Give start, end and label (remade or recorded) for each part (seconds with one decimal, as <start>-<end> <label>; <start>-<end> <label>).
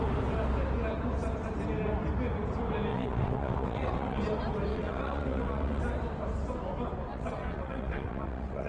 0.0-2.9 recorded; 2.9-4.2 remade; 4.2-4.7 recorded; 4.7-5.8 remade; 5.8-7.1 recorded; 7.1-8.7 remade